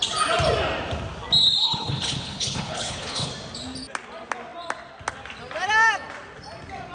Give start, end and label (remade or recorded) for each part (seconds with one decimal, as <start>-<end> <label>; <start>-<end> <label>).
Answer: 0.0-1.6 recorded; 1.6-3.3 remade; 3.3-6.9 recorded